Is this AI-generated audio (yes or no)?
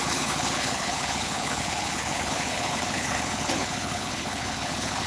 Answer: yes